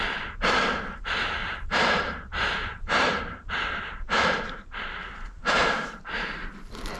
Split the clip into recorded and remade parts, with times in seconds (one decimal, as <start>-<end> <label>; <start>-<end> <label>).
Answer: 0.0-1.4 recorded; 1.4-3.8 remade; 3.8-5.4 recorded; 5.4-6.3 remade; 6.3-7.0 recorded